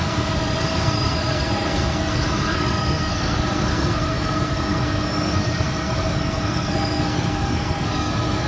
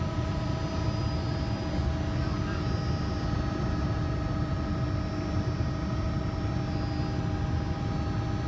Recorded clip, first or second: second